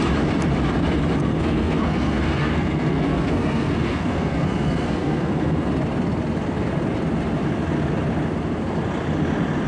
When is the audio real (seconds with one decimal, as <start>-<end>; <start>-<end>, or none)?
0.0-1.2; 5.7-9.7